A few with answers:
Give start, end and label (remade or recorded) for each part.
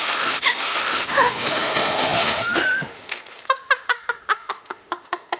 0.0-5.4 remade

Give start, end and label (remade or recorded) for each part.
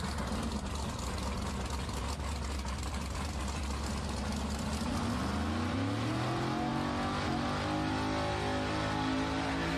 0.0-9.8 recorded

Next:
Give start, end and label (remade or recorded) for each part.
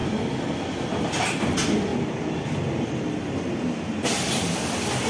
0.0-1.9 recorded; 1.9-5.1 remade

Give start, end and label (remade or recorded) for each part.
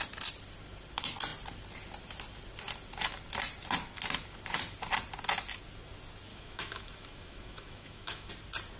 0.0-6.3 recorded; 6.3-8.3 remade; 8.3-8.8 recorded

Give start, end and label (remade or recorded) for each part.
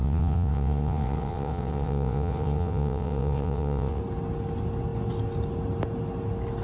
0.0-4.0 remade; 4.0-6.6 recorded